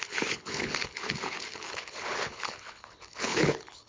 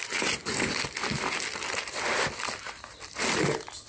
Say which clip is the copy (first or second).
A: first